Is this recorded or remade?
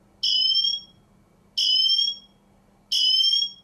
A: recorded